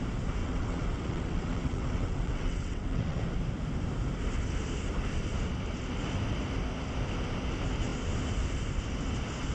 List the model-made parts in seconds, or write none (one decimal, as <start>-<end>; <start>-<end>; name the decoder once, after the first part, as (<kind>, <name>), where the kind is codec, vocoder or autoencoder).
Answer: 0.4-3.2 (vocoder, WaveNeXt)